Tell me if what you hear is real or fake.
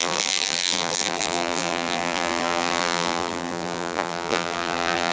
fake